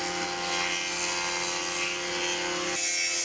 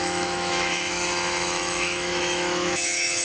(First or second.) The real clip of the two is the first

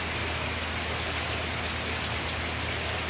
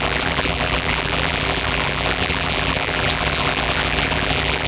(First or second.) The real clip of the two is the first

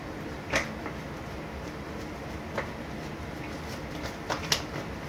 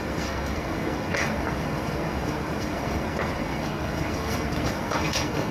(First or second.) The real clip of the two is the first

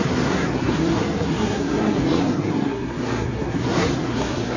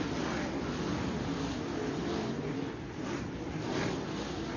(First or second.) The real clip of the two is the second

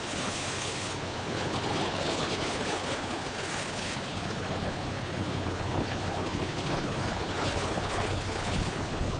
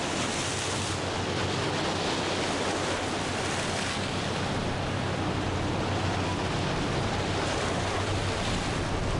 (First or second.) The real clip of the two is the second